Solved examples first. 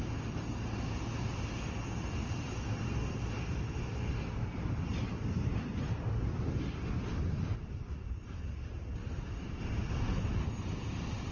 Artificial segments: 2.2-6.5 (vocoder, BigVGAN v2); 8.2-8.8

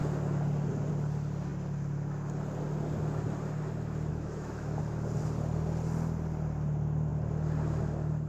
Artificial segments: 4.1-4.8 (autoencoder, DAC-VAE)

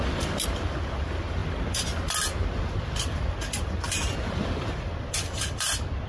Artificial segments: none

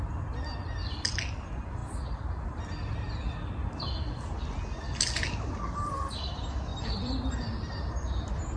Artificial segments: none

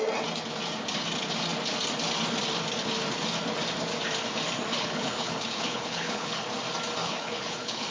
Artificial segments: 4.7-6.4 (codec, HILCodec); 7.0-7.9